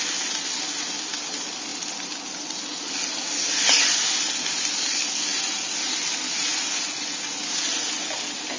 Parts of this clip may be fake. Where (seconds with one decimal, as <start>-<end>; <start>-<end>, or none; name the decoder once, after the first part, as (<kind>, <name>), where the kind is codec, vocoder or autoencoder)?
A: none